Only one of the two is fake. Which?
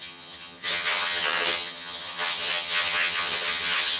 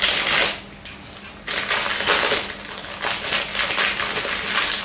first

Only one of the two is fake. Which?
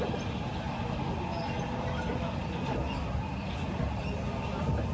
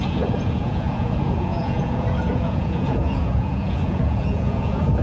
second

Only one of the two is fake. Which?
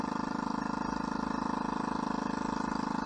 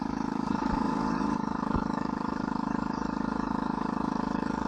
second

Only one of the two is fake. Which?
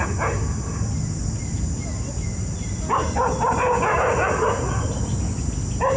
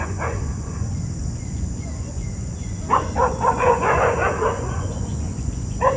second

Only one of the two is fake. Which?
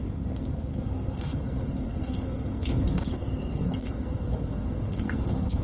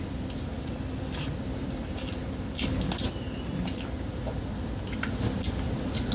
first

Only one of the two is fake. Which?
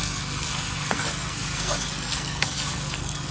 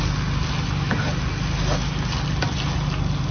first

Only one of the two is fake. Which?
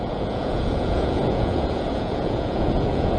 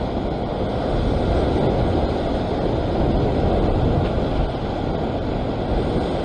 first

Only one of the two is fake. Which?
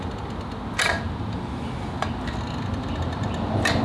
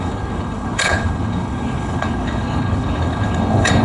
second